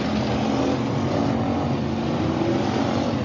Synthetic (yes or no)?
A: no